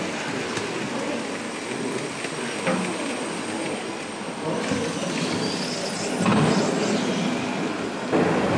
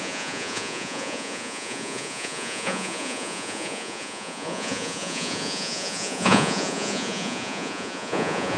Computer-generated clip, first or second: second